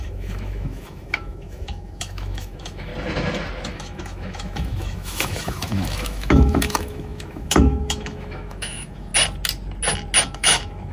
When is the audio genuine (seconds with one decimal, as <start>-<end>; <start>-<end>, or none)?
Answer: 2.9-3.7; 9.1-10.2